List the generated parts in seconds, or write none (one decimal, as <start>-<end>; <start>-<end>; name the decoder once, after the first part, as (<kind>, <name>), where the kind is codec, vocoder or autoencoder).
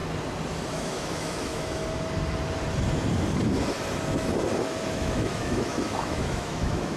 0.7-1.8 (autoencoder, DAC-VAE); 4.9-7.0